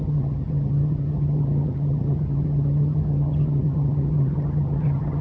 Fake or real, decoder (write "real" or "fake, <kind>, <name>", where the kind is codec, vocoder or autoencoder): fake, vocoder, HiFi-GAN